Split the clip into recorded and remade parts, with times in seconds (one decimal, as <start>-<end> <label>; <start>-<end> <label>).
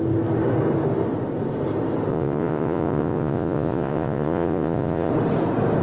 0.0-2.1 recorded; 2.1-5.1 remade; 5.1-5.8 recorded